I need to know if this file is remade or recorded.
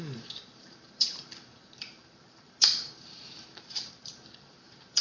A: remade